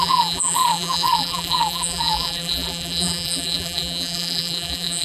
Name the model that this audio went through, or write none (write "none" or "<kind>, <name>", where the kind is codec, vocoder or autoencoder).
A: vocoder, BigVGAN v2